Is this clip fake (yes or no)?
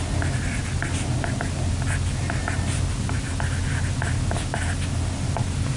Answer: no